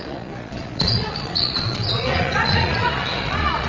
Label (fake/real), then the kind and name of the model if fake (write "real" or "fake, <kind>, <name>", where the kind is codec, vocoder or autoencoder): fake, vocoder, Vocos